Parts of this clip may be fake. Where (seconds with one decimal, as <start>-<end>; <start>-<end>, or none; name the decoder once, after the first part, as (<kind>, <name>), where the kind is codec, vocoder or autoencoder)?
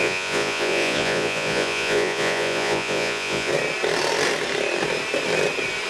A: 0.0-3.5 (vocoder, Vocos)